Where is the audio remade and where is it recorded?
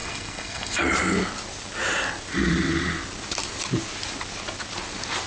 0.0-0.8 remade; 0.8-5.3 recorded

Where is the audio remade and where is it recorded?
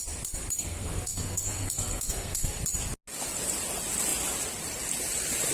0.0-0.6 recorded; 0.6-2.6 remade; 2.6-5.5 recorded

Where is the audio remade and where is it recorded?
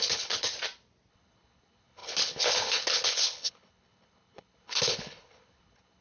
0.0-0.5 remade; 0.5-1.1 recorded; 1.1-6.0 remade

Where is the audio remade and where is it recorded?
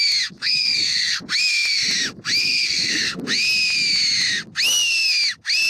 0.0-0.4 recorded; 0.4-1.2 remade; 1.2-2.4 recorded; 2.4-3.2 remade; 3.2-5.7 recorded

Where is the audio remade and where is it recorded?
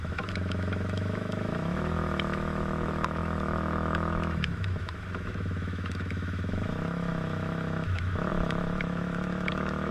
0.0-9.9 remade